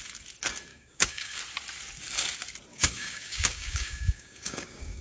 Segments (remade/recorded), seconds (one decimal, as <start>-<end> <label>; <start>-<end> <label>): 0.0-0.7 recorded; 0.7-1.4 remade; 1.4-2.7 recorded; 2.7-5.0 remade